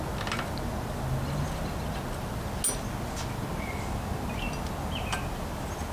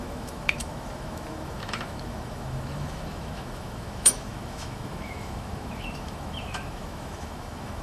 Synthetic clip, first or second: second